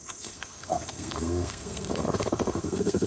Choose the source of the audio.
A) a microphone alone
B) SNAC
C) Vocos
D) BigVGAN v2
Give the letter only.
B